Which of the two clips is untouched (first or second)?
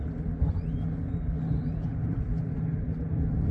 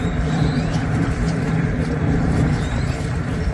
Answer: first